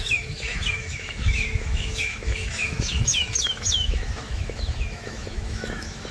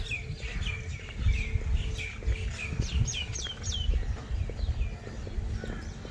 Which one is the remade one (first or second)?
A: first